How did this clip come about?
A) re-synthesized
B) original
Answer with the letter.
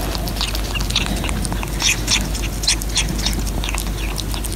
B